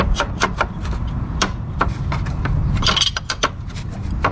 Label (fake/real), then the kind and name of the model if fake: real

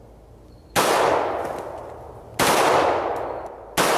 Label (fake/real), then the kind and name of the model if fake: real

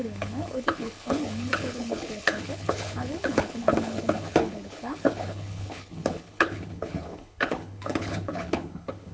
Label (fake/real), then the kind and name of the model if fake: fake, codec, HILCodec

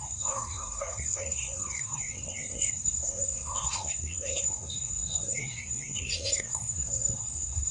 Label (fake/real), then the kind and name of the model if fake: fake, codec, SNAC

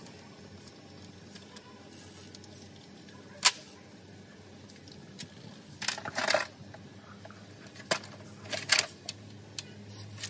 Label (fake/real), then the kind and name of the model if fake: real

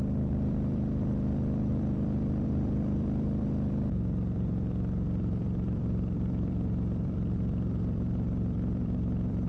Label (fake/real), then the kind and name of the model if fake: fake, vocoder, BigVGAN v2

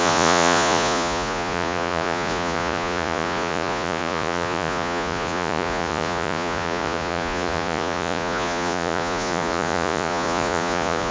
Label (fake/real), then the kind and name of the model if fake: fake, vocoder, Vocos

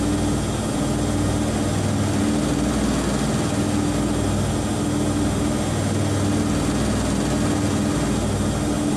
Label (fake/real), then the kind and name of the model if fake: real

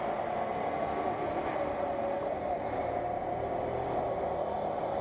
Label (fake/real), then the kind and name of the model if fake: real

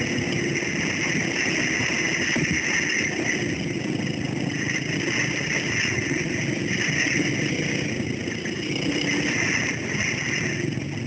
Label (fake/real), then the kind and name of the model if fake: real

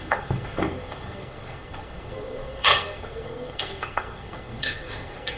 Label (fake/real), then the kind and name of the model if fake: fake, codec, SNAC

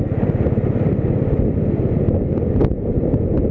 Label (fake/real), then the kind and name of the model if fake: fake, vocoder, BigVGAN v2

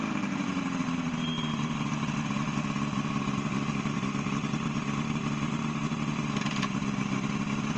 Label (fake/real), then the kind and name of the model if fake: real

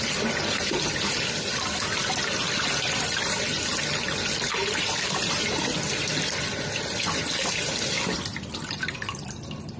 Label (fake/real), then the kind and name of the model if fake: real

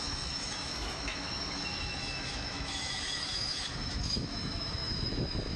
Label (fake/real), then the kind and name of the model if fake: fake, autoencoder, DAC-VAE